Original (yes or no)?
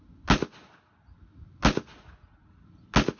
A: yes